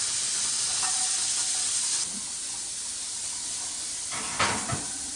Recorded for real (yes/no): no